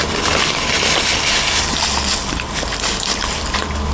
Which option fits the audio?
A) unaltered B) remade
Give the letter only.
A